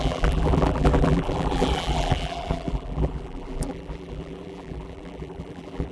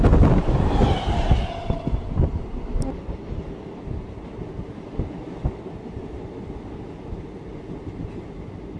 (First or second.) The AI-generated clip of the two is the first